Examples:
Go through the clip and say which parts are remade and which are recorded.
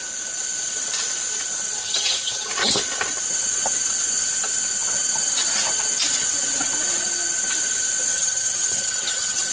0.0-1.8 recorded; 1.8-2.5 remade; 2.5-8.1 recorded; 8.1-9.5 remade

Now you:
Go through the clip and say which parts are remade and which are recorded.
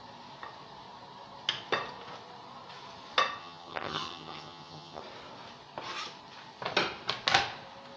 0.0-3.4 recorded; 3.4-5.0 remade; 5.0-8.0 recorded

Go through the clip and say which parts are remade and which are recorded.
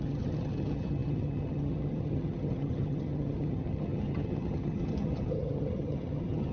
0.0-6.5 remade